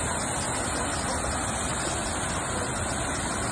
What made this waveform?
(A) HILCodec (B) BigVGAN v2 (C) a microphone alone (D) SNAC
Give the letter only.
C